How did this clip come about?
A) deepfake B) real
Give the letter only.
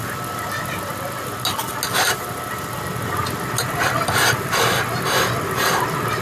B